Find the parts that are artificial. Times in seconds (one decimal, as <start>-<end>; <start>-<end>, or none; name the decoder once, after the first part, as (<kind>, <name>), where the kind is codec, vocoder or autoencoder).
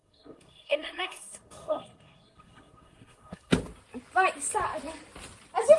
0.0-3.5 (codec, SNAC)